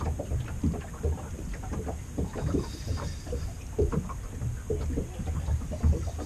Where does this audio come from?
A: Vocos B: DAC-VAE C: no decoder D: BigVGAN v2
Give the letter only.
D